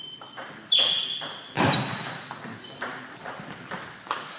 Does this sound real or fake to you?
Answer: real